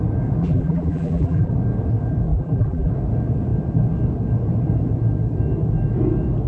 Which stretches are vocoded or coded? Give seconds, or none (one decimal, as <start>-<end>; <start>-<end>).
0.4-1.5; 2.3-2.9